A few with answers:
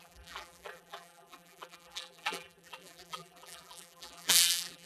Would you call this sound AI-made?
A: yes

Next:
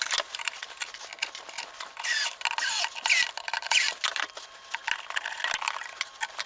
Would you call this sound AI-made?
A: no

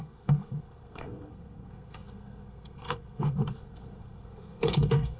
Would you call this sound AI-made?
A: yes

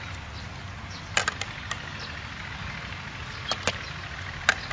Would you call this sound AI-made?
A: no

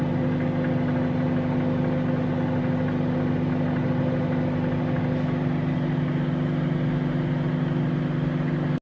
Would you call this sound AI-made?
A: no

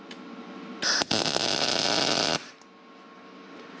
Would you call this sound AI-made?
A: no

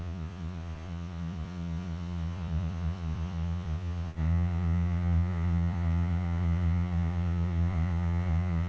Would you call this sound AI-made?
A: yes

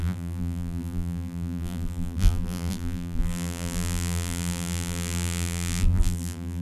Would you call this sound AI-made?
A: yes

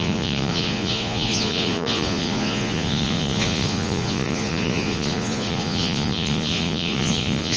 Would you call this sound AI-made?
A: yes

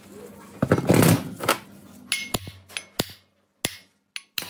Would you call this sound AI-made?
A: no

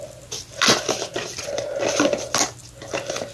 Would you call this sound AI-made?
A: no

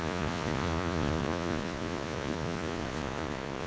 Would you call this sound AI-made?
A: yes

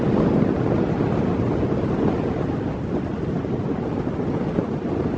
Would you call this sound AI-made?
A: no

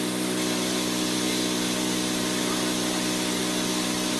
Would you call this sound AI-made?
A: no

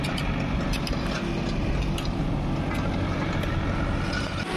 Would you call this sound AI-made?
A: no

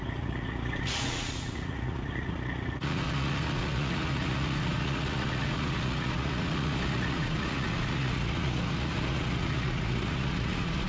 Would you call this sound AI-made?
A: yes